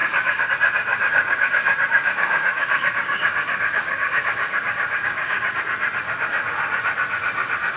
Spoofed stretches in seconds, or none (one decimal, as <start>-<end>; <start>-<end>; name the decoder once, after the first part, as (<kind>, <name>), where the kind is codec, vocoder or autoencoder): 0.0-0.5 (codec, DAC); 0.9-5.6